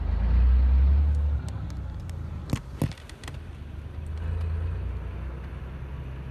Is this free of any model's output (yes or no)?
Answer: yes